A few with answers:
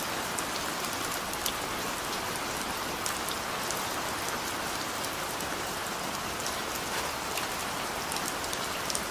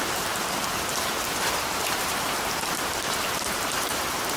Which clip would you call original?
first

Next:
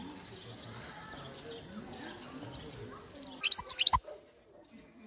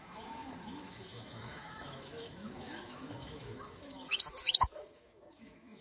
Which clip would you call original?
first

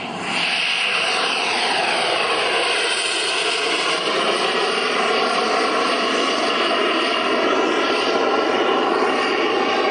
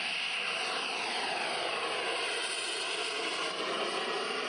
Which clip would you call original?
second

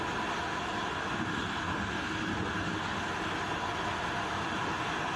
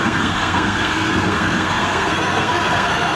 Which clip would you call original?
first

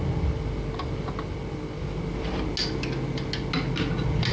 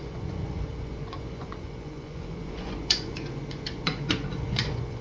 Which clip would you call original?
first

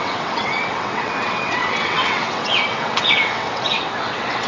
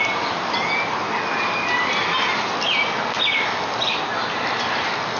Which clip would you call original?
second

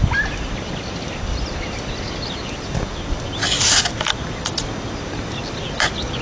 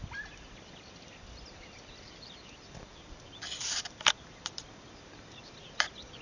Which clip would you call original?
first